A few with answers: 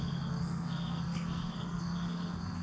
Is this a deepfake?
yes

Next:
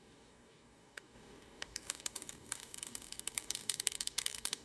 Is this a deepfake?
yes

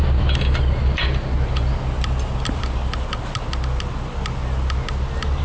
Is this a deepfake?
no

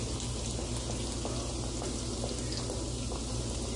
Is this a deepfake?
no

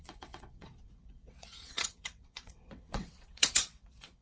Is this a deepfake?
yes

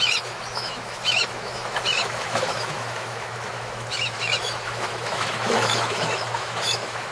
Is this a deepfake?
yes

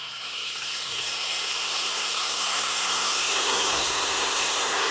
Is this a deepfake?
yes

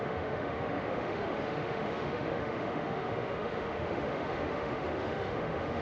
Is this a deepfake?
yes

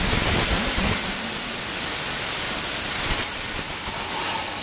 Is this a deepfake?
no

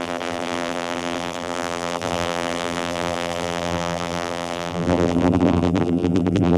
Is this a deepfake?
yes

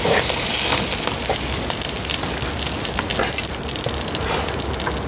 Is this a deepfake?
no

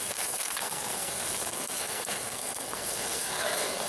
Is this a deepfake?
yes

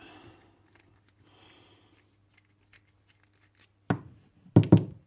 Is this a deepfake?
no